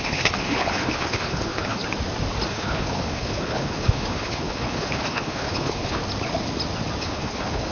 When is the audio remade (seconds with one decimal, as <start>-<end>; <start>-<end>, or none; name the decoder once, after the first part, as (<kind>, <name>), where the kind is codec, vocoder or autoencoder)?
0.0-1.8 (codec, HILCodec); 2.5-6.0; 7.0-7.7